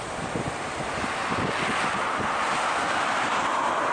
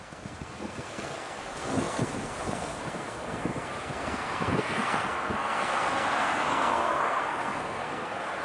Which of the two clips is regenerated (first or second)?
second